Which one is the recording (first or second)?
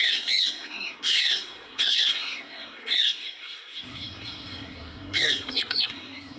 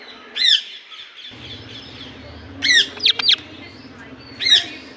second